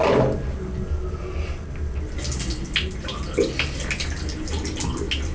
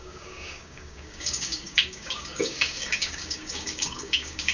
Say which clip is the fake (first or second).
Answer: second